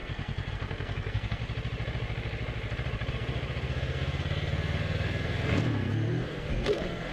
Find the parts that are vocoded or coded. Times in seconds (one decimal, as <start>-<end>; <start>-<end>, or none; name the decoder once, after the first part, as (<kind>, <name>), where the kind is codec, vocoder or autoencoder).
0.0-1.4 (codec, SNAC); 3.1-7.1